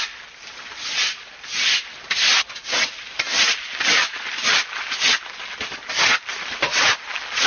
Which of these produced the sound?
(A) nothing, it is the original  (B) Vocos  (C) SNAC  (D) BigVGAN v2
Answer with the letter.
A